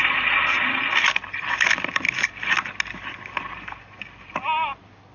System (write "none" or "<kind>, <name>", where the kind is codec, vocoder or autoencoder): none